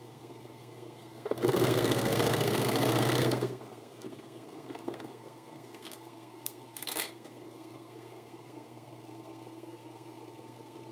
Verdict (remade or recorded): remade